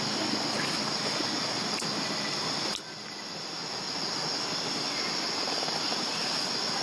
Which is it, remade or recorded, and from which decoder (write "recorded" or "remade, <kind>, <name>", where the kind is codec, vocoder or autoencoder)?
recorded